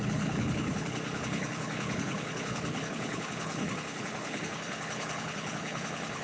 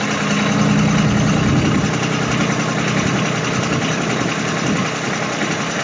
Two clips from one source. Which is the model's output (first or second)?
first